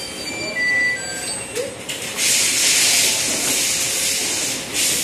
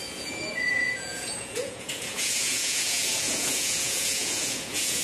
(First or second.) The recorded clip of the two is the first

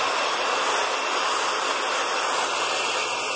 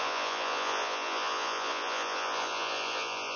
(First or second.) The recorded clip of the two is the first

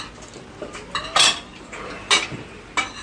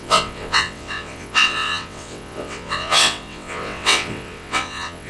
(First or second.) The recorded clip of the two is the first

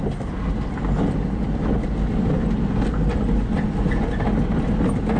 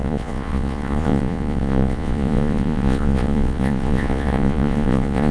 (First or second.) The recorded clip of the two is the first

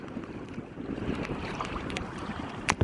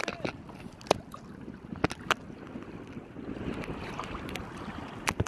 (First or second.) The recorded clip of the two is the second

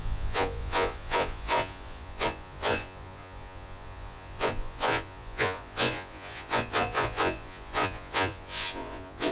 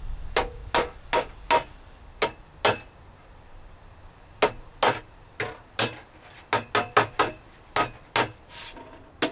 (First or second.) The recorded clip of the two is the second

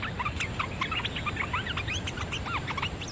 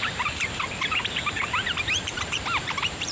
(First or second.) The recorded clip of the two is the first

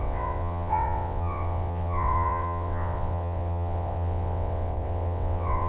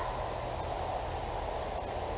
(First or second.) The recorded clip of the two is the second